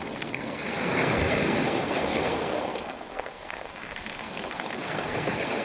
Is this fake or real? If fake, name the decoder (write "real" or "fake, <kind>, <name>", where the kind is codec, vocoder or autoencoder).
fake, codec, SNAC